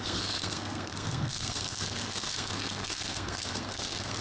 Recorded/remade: remade